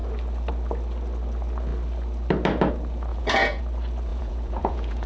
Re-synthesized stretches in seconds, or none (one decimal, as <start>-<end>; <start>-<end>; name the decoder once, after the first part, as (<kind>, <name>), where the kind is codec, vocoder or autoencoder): 3.1-3.6 (vocoder, Vocos); 4.1-5.1